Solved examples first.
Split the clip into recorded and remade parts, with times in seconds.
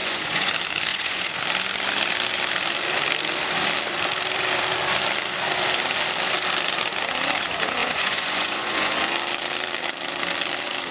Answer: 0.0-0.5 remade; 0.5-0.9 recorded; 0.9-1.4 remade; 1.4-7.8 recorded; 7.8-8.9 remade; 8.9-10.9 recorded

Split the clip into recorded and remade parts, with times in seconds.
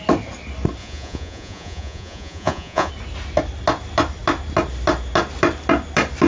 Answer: 0.0-0.8 recorded; 0.8-2.9 remade; 2.9-6.3 recorded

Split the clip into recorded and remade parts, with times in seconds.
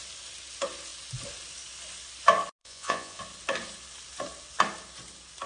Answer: 0.0-2.6 recorded; 2.6-3.2 remade; 3.2-5.5 recorded